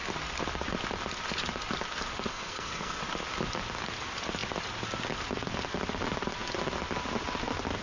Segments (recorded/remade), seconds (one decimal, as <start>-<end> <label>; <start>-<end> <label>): 0.0-2.3 recorded; 2.3-3.0 remade; 3.0-7.8 recorded